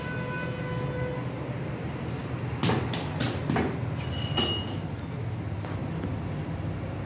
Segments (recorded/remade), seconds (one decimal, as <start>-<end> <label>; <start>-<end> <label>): 0.0-7.1 recorded